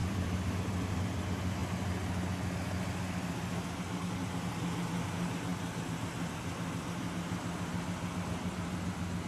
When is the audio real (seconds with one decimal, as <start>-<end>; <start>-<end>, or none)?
1.0-5.5; 8.5-9.3